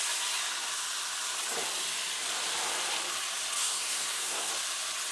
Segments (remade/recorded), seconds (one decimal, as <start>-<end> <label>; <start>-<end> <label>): 0.0-3.6 recorded; 3.6-4.5 remade; 4.5-5.1 recorded